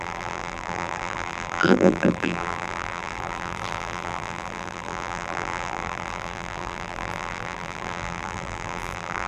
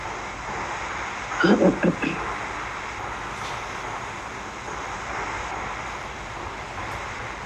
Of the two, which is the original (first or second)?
second